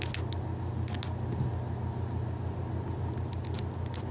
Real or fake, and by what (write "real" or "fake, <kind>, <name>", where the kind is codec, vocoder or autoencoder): real